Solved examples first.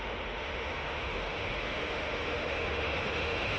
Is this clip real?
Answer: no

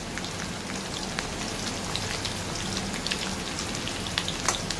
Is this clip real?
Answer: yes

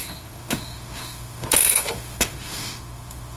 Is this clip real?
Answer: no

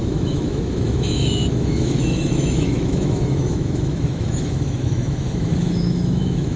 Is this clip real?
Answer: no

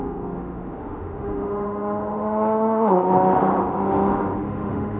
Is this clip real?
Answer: no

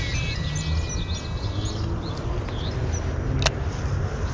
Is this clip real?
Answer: yes